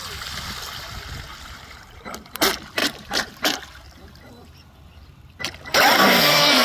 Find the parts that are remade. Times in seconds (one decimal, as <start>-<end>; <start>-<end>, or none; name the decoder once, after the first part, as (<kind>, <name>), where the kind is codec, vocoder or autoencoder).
1.3-2.4 (vocoder, BigVGAN v2); 2.8-3.6